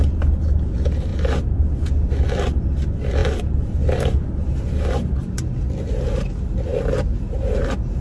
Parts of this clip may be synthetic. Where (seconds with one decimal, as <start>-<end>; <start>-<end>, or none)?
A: none

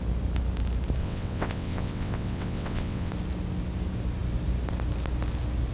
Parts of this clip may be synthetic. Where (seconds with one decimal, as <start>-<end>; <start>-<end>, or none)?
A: 1.0-3.1

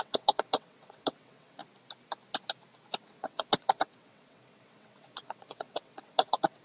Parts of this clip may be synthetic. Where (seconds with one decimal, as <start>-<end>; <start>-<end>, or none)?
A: 0.0-1.6; 3.0-6.6

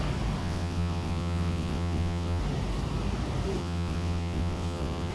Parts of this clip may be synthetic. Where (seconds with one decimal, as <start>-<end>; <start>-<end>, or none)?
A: 0.4-2.4; 3.6-5.1

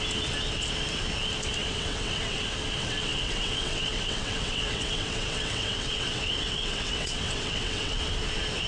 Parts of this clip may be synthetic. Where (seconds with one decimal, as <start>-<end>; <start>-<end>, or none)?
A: 1.6-2.4; 2.8-8.0